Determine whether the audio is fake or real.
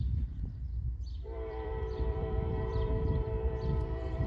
fake